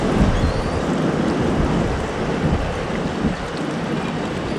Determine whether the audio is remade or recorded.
recorded